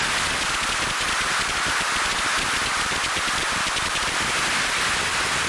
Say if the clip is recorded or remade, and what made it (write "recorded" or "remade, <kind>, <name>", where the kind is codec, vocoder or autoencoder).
recorded